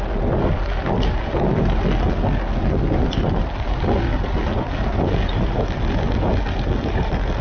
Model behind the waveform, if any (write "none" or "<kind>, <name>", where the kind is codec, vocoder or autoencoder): none